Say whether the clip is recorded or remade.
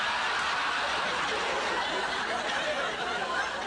recorded